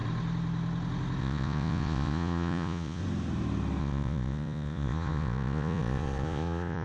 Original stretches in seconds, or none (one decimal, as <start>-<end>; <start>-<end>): 0.0-1.2; 3.0-3.8